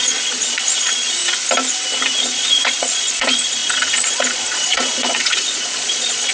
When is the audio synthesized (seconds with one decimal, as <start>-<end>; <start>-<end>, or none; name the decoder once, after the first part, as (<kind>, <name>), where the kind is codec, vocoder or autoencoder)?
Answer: 0.0-1.2 (vocoder, Vocos); 2.2-6.3

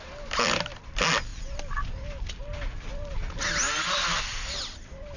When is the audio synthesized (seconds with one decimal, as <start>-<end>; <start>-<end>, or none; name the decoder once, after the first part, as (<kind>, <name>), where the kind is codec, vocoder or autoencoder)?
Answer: none

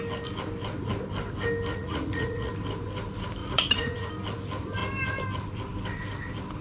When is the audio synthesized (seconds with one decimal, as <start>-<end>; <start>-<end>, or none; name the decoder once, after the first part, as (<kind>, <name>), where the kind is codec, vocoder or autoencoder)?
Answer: 1.7-2.5 (vocoder, Vocos); 3.4-4.1

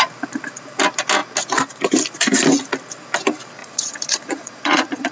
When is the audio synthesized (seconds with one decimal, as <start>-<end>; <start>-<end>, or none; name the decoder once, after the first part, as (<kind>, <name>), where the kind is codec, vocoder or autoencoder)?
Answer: 3.6-5.1 (vocoder, Vocos)

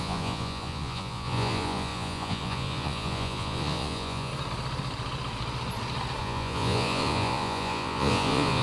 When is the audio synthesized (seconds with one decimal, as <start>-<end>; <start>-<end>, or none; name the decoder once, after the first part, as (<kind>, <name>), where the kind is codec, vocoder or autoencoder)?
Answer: 0.0-4.3 (vocoder, Vocos); 6.2-8.6